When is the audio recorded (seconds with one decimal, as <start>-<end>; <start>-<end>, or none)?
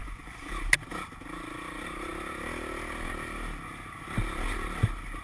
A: 0.5-5.2